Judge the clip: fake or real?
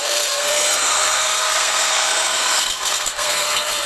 fake